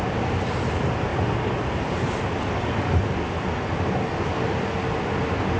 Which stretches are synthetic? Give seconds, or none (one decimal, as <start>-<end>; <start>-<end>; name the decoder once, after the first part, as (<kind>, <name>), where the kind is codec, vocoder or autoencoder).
1.1-1.7 (vocoder, BigVGAN v2)